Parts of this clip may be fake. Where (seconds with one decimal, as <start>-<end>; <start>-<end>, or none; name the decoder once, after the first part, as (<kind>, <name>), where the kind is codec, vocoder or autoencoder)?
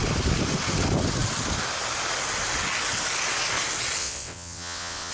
4.0-5.1 (vocoder, WaveNeXt)